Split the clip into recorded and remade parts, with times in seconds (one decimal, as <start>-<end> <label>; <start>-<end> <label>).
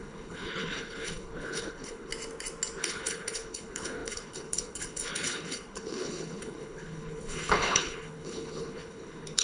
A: 0.0-2.1 remade; 2.1-2.8 recorded; 2.8-9.4 remade